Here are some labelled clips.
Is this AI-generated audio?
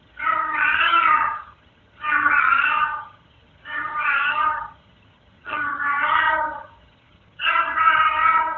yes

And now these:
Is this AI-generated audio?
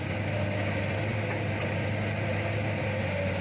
no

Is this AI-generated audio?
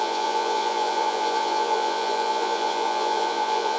yes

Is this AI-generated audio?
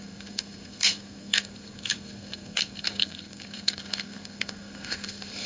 yes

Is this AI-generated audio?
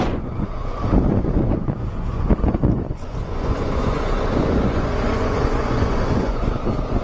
yes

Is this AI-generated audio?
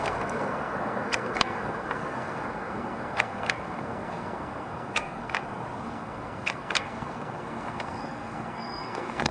yes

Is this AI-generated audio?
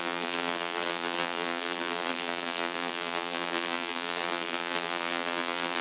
yes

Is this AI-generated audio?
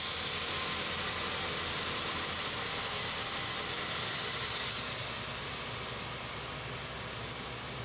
no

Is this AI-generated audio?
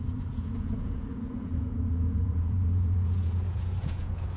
yes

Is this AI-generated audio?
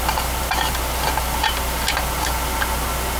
no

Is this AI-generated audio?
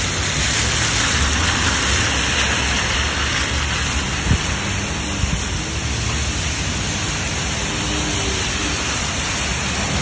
no